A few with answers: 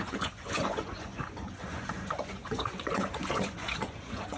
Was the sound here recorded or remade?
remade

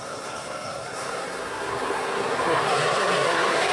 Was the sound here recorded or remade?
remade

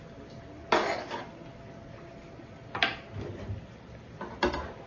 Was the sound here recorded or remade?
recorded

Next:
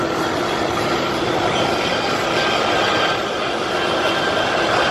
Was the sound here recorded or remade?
recorded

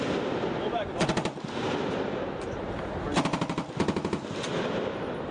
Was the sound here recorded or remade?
recorded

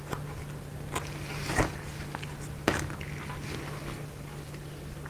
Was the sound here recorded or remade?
recorded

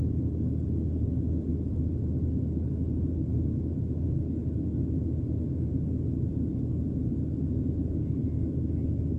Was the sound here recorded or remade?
recorded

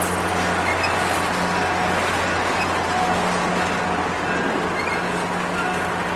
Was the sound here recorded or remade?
recorded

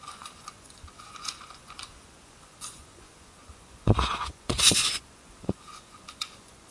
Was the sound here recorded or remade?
remade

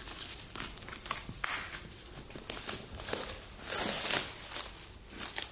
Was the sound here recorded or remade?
recorded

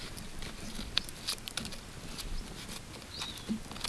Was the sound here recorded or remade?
recorded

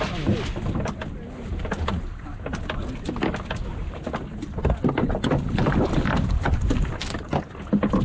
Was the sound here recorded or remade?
recorded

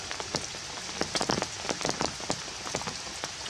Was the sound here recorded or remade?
recorded